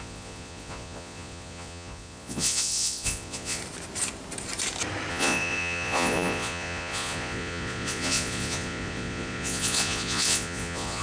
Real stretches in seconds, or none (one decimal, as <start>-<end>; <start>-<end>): 3.6-5.1